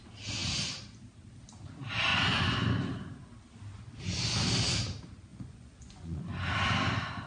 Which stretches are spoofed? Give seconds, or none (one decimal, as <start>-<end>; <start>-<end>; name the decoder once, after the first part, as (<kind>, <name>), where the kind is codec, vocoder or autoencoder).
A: 5.3-6.2 (vocoder, Vocos)